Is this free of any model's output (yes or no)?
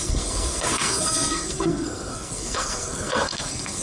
no